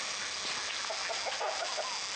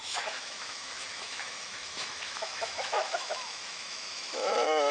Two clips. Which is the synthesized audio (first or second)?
second